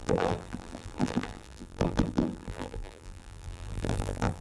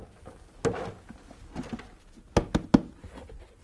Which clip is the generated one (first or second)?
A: first